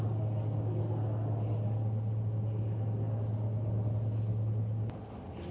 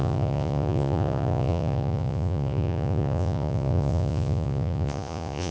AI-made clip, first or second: second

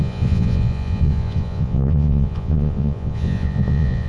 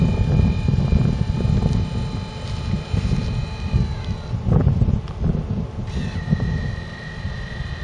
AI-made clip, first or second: first